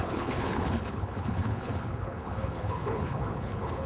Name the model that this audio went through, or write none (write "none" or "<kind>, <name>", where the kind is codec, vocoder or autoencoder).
codec, HILCodec